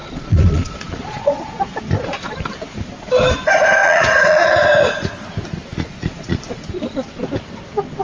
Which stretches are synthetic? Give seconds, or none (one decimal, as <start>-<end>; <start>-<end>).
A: 0.0-1.8; 3.8-4.5; 5.7-6.4